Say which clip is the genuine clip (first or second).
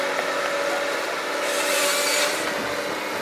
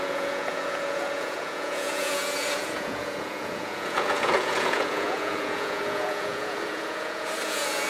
first